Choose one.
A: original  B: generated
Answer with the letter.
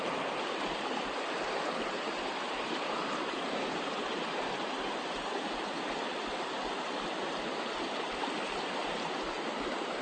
B